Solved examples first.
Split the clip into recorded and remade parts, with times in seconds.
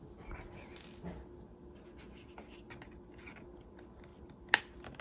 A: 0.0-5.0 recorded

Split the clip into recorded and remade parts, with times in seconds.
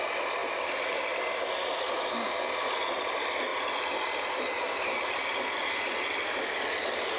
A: 0.0-7.2 recorded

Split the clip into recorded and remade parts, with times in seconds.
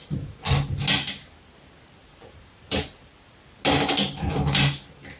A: 0.0-2.0 recorded; 2.0-3.0 remade; 3.0-5.2 recorded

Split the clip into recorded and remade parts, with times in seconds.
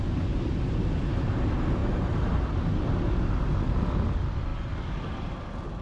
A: 0.0-5.8 recorded